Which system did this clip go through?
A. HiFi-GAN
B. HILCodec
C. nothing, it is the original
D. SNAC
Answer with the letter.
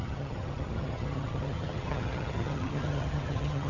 A